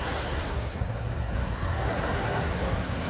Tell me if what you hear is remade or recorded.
remade